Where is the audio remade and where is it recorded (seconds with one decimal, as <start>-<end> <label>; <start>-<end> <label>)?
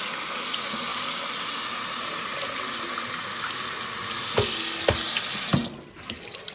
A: 0.0-6.5 recorded